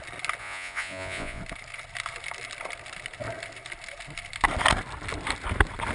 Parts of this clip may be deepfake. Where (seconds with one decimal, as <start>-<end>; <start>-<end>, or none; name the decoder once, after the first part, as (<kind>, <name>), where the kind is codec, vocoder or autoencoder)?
0.4-1.4 (vocoder, Vocos)